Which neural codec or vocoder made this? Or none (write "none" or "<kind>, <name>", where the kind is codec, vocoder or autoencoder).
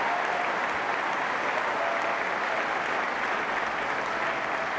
none